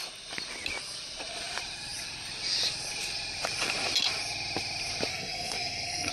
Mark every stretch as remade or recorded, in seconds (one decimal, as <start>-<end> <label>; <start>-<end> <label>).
0.0-5.1 recorded; 5.1-6.1 remade